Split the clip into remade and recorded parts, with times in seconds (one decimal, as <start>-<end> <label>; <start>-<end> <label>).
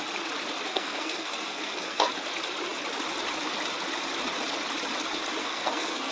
0.0-0.7 recorded; 0.7-2.1 remade; 2.1-5.4 recorded; 5.4-6.1 remade